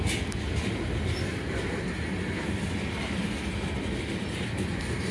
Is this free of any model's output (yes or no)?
yes